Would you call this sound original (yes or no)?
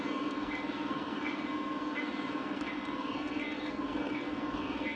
no